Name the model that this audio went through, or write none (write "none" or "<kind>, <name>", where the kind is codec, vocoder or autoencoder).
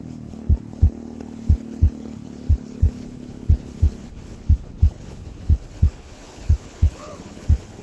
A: codec, HILCodec